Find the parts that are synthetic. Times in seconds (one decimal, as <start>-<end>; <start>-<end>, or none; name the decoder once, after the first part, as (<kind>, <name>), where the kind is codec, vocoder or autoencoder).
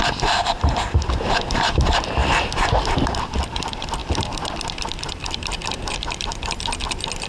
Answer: 0.0-2.2 (vocoder, BigVGAN v2); 3.1-7.3